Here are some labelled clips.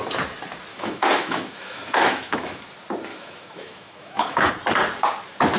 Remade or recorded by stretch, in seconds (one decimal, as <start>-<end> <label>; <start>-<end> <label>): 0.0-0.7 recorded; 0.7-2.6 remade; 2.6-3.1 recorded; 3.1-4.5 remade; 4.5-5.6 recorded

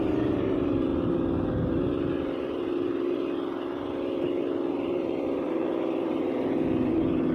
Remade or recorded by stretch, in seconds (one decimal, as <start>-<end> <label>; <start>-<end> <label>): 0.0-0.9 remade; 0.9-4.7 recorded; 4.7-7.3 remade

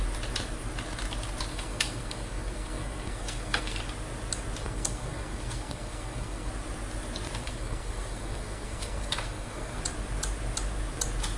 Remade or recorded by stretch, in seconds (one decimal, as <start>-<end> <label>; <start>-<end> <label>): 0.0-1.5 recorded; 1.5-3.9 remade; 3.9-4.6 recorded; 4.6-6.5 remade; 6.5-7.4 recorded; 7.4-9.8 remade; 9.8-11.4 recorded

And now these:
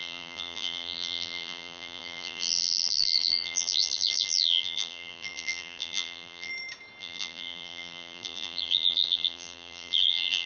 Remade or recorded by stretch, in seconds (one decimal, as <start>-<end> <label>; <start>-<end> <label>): 0.0-6.5 remade; 6.5-7.0 recorded; 7.0-10.5 remade

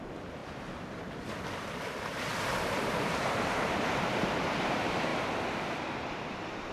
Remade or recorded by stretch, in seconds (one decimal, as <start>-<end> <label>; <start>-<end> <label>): 0.0-0.4 remade; 0.4-0.9 recorded; 0.9-2.3 remade; 2.3-4.4 recorded; 4.4-5.1 remade; 5.1-6.1 recorded; 6.1-6.7 remade

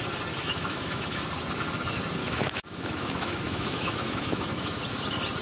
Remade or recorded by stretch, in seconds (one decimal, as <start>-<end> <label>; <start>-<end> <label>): 0.0-0.4 recorded; 0.4-1.2 remade; 1.2-2.2 recorded; 2.2-4.8 remade; 4.8-5.4 recorded